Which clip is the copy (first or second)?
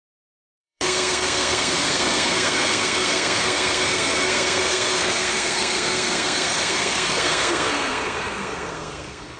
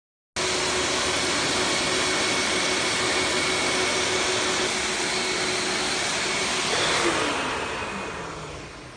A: first